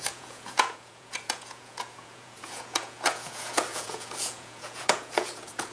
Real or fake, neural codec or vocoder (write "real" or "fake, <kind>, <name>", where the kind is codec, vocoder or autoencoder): fake, vocoder, Vocos